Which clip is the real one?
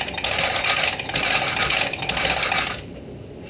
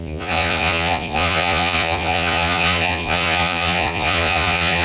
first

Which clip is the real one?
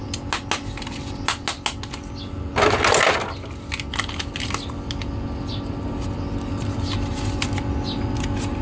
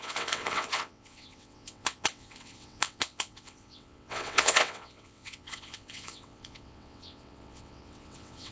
first